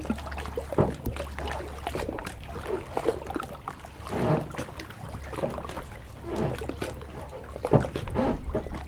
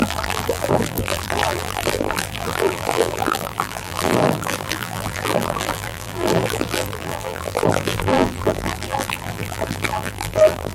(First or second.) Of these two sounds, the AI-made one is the second